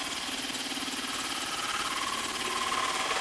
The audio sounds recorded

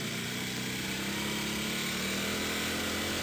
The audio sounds remade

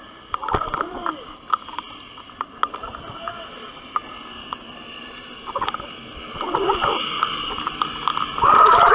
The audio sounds recorded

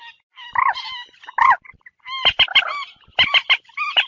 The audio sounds remade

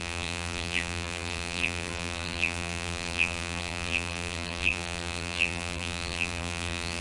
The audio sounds remade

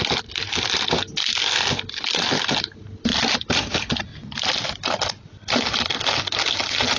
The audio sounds recorded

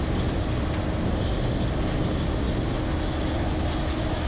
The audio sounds recorded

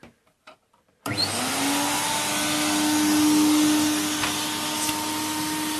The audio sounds recorded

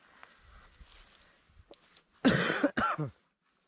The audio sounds recorded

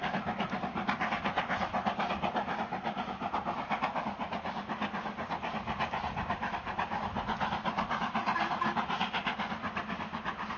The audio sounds recorded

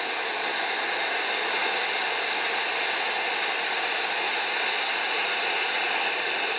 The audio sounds recorded